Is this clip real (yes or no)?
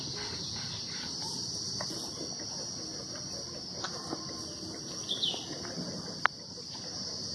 yes